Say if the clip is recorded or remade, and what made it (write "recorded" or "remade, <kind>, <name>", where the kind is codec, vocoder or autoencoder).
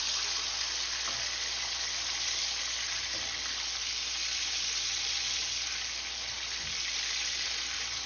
recorded